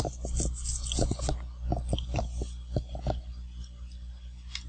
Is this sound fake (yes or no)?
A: no